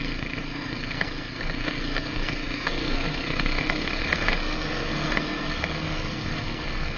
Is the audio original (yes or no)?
no